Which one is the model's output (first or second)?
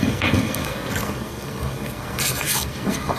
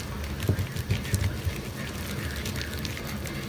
first